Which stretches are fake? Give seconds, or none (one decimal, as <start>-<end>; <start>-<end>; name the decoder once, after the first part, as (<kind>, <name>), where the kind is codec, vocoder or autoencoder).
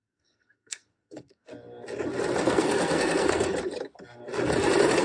0.0-1.5 (codec, SNAC); 2.4-3.5